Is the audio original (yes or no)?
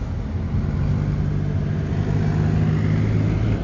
yes